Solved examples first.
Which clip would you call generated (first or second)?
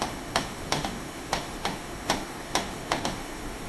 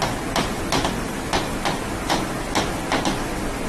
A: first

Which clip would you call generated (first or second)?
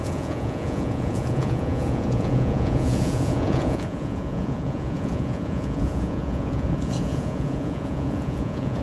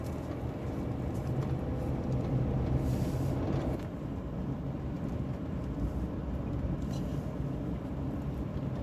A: first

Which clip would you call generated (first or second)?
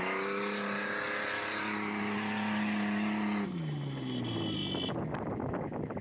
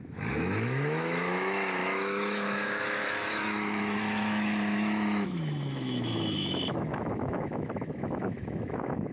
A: second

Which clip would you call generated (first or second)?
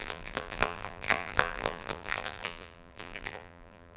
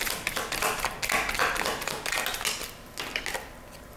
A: first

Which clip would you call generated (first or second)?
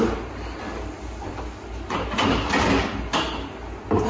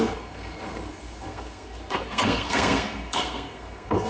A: second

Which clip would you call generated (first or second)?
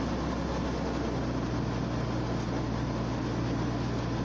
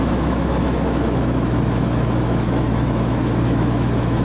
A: second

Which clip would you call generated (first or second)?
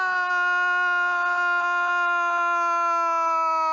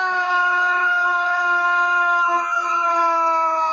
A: second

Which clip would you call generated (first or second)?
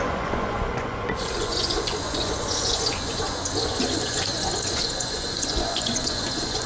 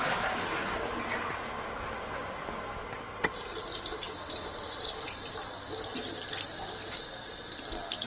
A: first